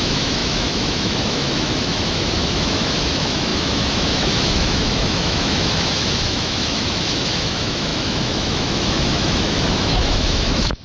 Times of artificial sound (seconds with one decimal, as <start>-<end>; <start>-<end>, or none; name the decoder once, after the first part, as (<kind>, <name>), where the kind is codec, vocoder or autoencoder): 0.0-10.8 (autoencoder, DAC-VAE)